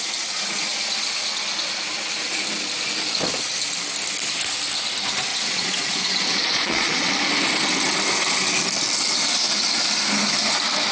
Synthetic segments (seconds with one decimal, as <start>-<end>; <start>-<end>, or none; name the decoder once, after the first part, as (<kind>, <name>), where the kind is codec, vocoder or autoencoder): 5.3-7.1 (vocoder, Vocos)